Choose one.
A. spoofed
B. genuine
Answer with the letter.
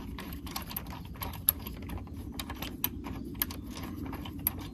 B